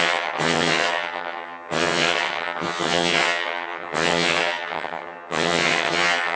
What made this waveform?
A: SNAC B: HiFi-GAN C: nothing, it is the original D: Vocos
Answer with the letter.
B